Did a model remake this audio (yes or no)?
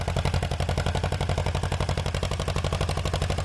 no